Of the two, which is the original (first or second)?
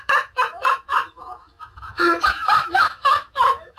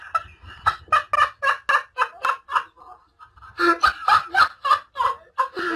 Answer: second